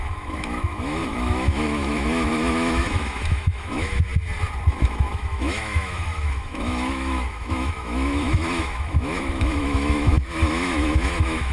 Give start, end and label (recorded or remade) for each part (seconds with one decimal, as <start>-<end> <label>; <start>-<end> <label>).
0.0-4.1 remade; 4.1-4.7 recorded; 4.7-11.5 remade